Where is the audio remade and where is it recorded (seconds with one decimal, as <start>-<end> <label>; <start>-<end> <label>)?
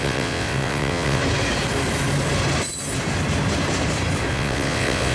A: 0.0-1.2 remade; 1.2-4.3 recorded; 4.3-5.1 remade